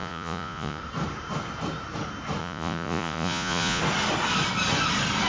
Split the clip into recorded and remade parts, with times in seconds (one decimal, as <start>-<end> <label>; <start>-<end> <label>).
0.0-0.8 remade; 0.8-2.4 recorded; 2.4-3.8 remade; 3.8-5.3 recorded